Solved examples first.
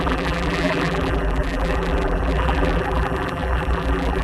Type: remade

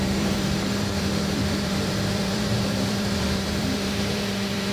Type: remade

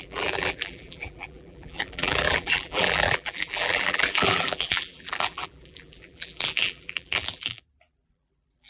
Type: remade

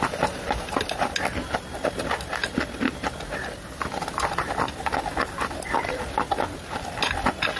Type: recorded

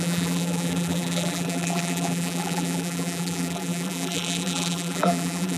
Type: remade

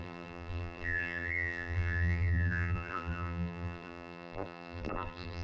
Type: remade